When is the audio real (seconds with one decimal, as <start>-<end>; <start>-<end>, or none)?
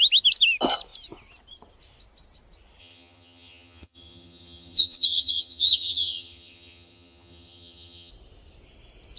0.0-2.8; 8.1-9.2